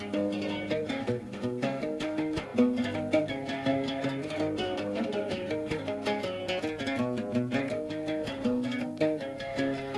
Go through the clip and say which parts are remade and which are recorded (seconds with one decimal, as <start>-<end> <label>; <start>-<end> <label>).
0.0-6.4 remade; 6.4-7.6 recorded; 7.6-10.0 remade